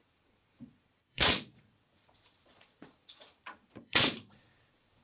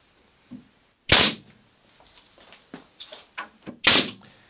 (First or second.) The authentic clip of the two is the second